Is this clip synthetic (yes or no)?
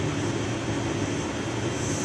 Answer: no